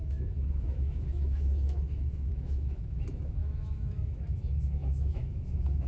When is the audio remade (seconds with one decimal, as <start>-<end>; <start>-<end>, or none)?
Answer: 0.0-5.9